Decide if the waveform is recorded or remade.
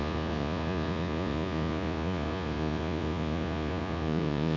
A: remade